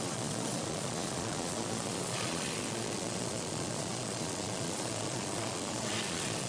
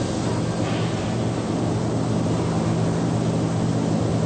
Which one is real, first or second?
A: second